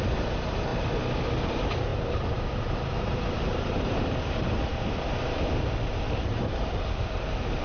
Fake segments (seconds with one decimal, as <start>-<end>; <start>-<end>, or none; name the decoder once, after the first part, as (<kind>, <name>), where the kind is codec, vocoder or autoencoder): 0.0-0.7 (vocoder, BigVGAN v2); 1.5-7.6